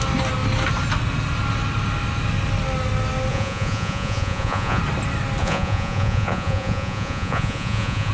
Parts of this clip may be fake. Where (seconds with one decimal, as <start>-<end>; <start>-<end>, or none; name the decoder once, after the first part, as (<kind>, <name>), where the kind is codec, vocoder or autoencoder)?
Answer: 3.3-4.8 (vocoder, Vocos); 5.4-8.1